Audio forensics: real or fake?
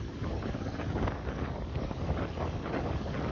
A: fake